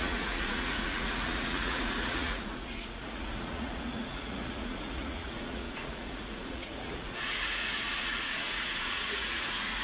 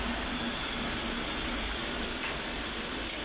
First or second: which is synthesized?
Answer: first